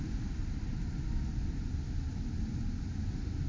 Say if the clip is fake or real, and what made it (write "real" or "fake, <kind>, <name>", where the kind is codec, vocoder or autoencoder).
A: real